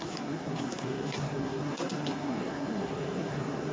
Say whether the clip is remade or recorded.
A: remade